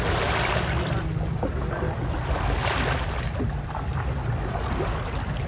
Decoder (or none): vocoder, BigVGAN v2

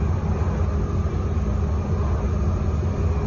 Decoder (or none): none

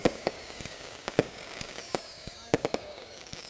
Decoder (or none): codec, DAC